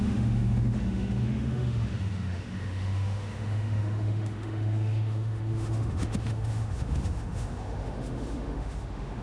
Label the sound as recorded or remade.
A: remade